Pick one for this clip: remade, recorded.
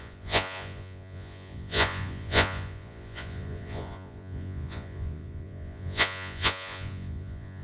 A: remade